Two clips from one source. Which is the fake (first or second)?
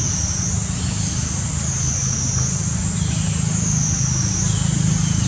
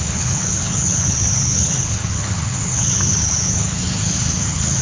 second